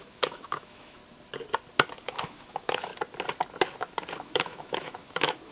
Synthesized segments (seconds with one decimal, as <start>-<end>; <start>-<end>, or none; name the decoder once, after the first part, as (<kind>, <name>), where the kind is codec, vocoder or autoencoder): 0.0-1.0 (autoencoder, DAC-VAE); 2.0-2.9; 4.2-5.5